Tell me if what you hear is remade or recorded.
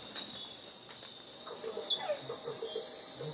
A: recorded